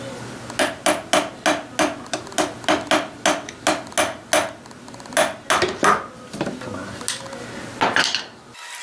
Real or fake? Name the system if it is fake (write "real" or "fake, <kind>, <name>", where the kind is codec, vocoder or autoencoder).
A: real